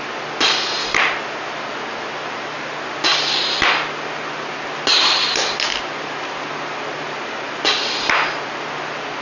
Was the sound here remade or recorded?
recorded